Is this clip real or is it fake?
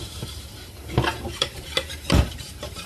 fake